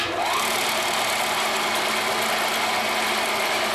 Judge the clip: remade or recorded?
recorded